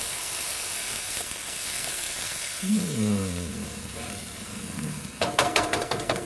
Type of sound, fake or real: fake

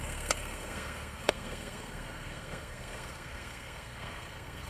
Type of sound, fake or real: fake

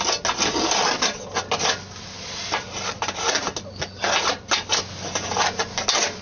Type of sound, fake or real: real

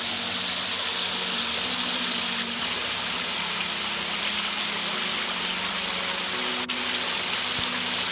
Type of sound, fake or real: real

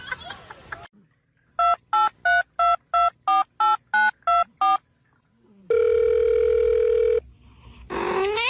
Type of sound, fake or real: real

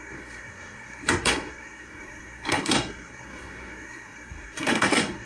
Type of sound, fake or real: fake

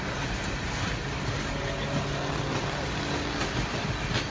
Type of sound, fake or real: real